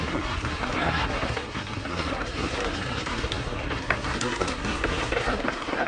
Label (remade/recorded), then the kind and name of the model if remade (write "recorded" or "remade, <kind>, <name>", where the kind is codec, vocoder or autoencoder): remade, codec, SNAC